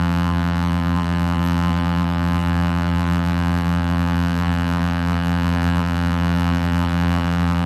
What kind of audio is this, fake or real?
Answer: fake